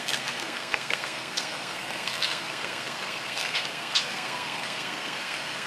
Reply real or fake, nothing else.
fake